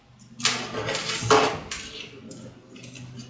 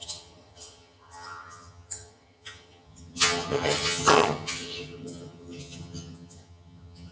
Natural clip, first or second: first